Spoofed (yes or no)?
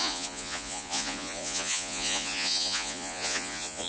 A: yes